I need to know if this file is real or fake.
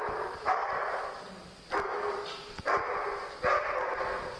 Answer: real